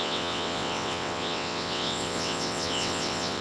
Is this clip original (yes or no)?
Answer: no